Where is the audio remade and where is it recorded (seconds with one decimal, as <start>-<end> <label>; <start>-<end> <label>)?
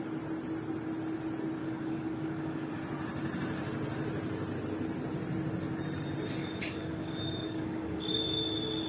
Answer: 0.0-1.6 recorded; 1.6-2.7 remade; 2.7-6.4 recorded; 6.4-8.1 remade; 8.1-8.9 recorded